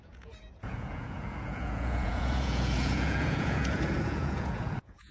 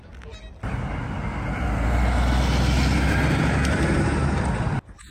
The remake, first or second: first